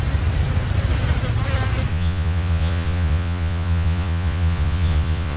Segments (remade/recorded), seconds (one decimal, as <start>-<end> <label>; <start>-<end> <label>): 0.0-1.9 recorded; 1.9-5.4 remade